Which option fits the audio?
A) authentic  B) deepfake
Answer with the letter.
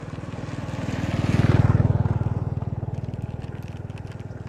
A